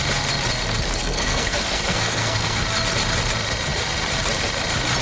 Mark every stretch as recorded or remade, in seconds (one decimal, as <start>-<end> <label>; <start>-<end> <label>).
0.0-1.0 recorded; 1.0-2.6 remade; 2.6-5.0 recorded